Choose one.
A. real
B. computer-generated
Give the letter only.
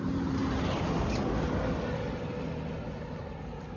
A